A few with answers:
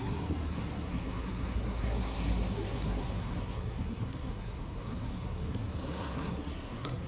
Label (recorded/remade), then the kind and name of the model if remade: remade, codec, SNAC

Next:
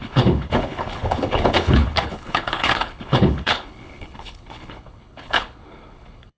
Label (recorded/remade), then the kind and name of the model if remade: remade, codec, HILCodec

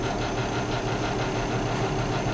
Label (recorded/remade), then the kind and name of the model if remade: recorded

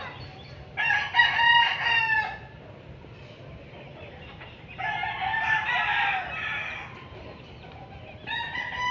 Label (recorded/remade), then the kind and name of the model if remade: recorded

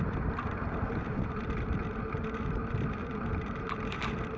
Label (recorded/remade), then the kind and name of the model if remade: remade, vocoder, BigVGAN v2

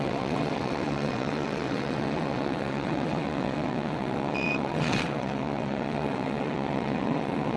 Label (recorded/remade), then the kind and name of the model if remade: remade, vocoder, WaveNeXt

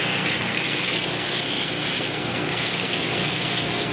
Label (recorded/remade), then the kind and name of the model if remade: remade, codec, SNAC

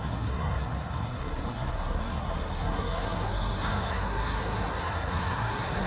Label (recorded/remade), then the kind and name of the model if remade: remade, codec, SNAC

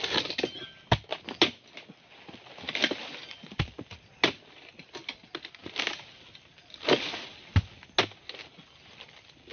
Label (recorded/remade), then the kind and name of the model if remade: recorded